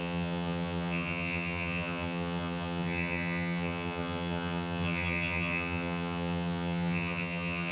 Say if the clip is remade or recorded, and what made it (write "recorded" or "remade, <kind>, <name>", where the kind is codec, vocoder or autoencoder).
remade, vocoder, HiFi-GAN